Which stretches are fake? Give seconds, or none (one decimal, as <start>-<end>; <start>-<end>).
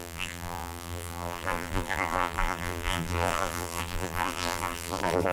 0.0-5.3